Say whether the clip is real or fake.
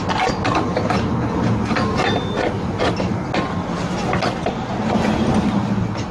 real